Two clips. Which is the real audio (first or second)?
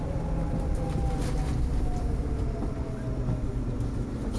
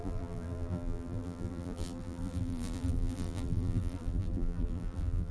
first